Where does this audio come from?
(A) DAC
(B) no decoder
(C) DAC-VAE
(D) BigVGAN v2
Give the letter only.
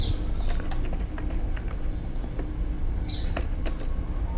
B